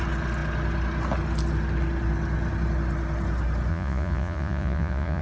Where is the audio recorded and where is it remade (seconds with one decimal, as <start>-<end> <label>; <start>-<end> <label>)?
0.0-3.7 recorded; 3.7-5.2 remade